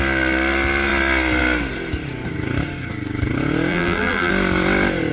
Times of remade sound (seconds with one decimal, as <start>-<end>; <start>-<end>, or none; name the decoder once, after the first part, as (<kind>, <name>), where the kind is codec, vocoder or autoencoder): 3.7-4.3 (vocoder, BigVGAN v2)